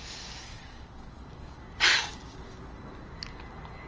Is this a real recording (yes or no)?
yes